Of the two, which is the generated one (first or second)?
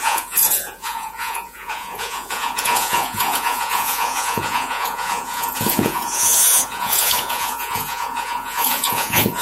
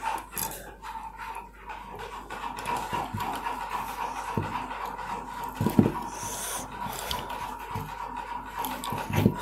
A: first